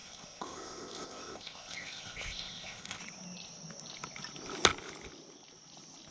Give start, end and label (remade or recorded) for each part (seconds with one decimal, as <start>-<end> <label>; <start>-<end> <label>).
0.0-3.0 remade; 3.0-6.1 recorded